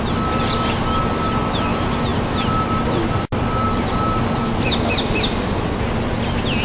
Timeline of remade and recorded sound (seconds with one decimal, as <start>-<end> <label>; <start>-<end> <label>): 0.0-6.6 recorded